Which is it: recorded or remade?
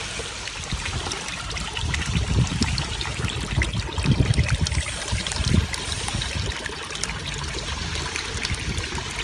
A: recorded